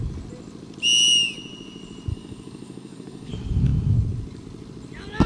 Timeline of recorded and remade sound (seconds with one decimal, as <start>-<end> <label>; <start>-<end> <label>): 0.0-2.1 recorded; 2.1-3.3 remade; 3.3-5.3 recorded